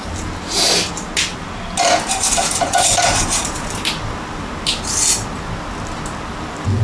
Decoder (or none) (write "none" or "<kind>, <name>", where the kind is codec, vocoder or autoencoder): none